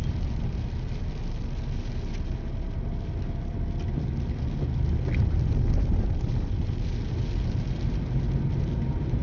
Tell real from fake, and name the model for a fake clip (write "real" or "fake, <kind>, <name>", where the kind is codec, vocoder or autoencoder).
real